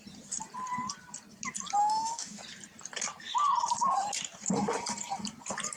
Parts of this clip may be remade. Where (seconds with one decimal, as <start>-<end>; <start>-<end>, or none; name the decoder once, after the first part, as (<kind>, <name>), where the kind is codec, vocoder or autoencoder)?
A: 1.8-2.4 (autoencoder, DAC-VAE)